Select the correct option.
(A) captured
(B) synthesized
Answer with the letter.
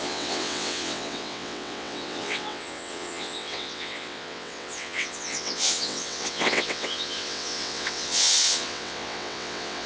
B